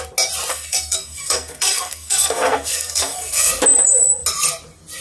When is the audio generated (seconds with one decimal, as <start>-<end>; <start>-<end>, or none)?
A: 0.5-3.5